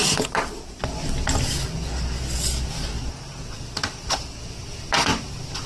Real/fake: real